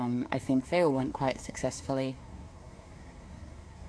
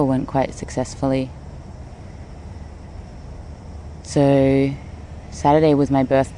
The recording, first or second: second